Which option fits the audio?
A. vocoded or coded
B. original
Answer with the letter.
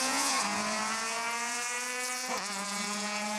A